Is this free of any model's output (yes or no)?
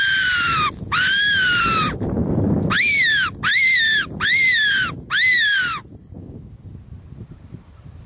yes